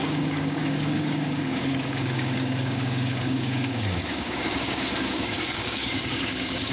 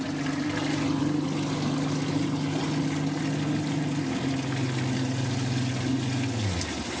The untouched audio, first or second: second